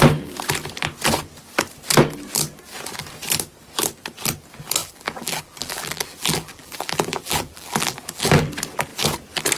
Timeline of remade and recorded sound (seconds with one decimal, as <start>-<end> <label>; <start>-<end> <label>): 0.0-4.8 recorded; 4.8-8.5 remade; 8.5-9.6 recorded